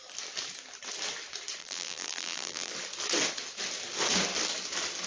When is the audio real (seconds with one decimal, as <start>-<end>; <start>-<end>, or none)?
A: 0.0-1.6; 2.7-5.1